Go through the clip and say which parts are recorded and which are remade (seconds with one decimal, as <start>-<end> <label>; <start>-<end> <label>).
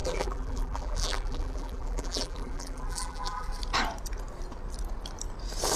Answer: 0.0-3.5 remade; 3.5-5.8 recorded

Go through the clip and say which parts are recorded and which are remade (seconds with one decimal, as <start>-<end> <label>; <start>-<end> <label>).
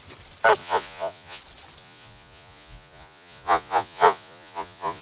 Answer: 0.0-0.6 recorded; 0.6-1.4 remade; 1.4-1.8 recorded; 1.8-5.0 remade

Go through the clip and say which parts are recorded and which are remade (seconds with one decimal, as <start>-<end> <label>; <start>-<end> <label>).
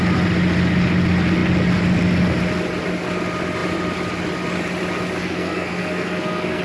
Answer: 0.0-5.2 recorded; 5.2-6.6 remade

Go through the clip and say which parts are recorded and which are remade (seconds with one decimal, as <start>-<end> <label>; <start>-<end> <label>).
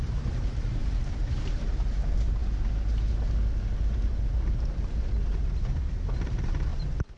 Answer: 0.0-2.4 remade; 2.4-3.6 recorded; 3.6-6.7 remade; 6.7-7.2 recorded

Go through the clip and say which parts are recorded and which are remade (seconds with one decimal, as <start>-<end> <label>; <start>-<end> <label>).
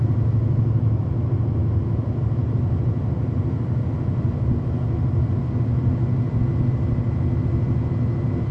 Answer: 0.0-8.5 recorded